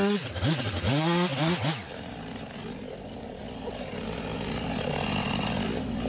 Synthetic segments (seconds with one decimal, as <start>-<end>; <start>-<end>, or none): none